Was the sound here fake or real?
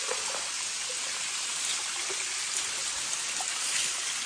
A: real